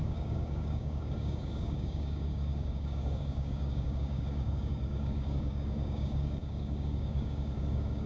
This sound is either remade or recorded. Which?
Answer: remade